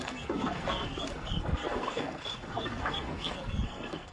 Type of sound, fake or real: fake